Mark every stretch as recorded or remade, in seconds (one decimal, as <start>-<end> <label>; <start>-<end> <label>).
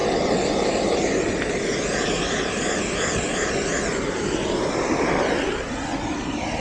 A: 0.0-6.6 recorded